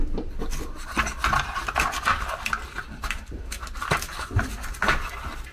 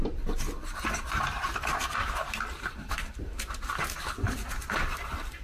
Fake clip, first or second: second